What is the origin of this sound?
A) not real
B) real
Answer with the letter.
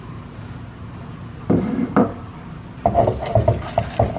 B